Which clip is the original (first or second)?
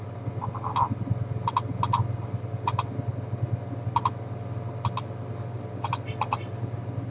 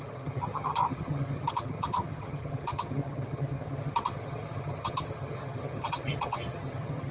first